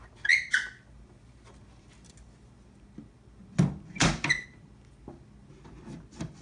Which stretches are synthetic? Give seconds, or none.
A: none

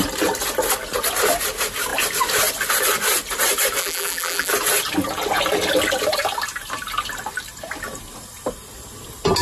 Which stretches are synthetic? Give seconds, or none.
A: 3.8-4.5 (vocoder, BigVGAN v2)

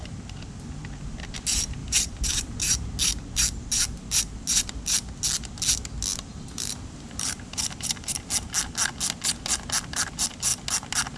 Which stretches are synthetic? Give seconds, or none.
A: 1.8-2.6 (vocoder, BigVGAN v2); 6.1-8.3

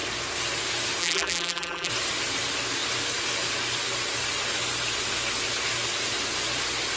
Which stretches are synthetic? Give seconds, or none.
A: 1.0-1.9 (vocoder, BigVGAN v2)

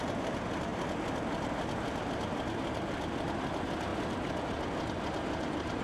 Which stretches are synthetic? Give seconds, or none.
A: 0.0-0.7 (vocoder, BigVGAN v2); 2.1-2.6; 3.3-5.8

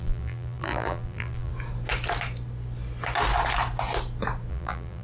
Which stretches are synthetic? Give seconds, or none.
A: 0.0-1.5 (vocoder, BigVGAN v2); 4.5-5.0